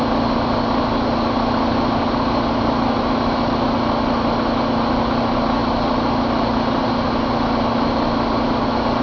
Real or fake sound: real